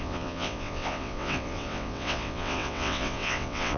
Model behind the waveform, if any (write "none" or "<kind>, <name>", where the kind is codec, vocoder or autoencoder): vocoder, WaveNeXt